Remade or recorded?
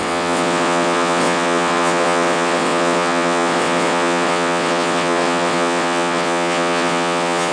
remade